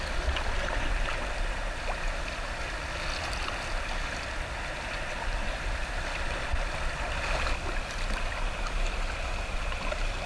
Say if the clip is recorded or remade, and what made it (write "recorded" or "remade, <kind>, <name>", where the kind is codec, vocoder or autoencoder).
recorded